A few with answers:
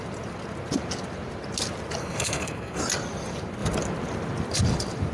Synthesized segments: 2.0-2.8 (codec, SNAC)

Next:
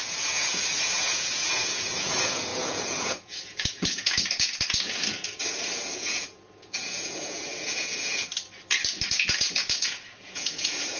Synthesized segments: 0.0-8.3 (vocoder, Vocos); 9.1-11.0

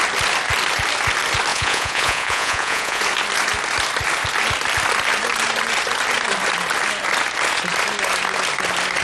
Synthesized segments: 1.5-3.0 (vocoder, Vocos)

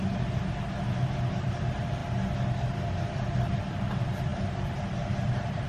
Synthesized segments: 4.3-5.7 (vocoder, BigVGAN v2)